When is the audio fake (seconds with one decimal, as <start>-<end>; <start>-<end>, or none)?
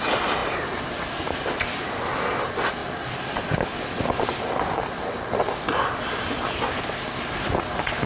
2.8-4.0